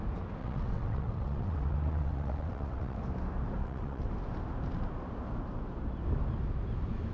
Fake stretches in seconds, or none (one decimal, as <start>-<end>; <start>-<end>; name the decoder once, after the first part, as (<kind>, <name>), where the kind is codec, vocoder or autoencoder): 0.4-3.0 (vocoder, WaveNeXt); 3.6-4.1